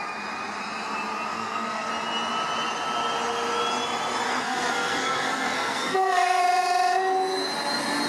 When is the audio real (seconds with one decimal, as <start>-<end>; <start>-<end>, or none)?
0.0-1.3; 1.9-4.3; 6.4-8.1